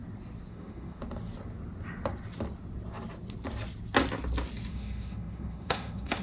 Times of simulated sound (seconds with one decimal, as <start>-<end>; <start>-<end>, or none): 0.5-1.0; 4.7-6.2